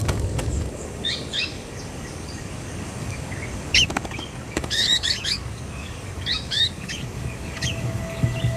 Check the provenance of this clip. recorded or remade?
remade